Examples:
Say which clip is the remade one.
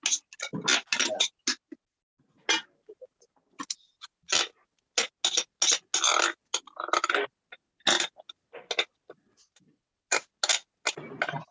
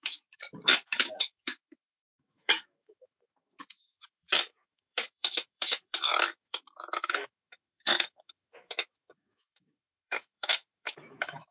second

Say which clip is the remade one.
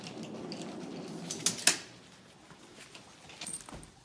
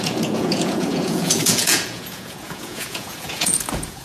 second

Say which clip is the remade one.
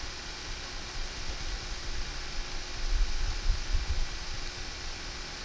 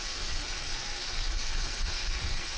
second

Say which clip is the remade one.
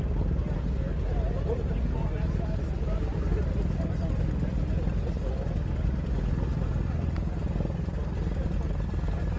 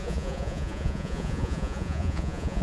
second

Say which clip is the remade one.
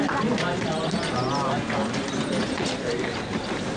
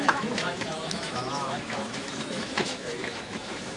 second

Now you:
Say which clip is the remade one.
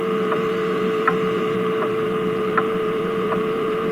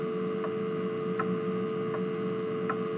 first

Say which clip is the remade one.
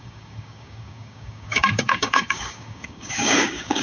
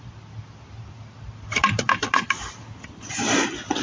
first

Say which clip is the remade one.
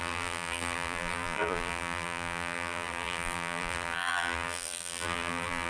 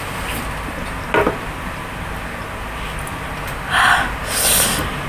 first